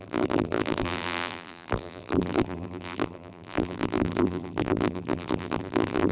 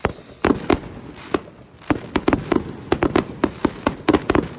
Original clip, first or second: second